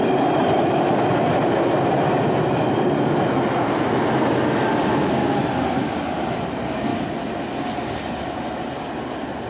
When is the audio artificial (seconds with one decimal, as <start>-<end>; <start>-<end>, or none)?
none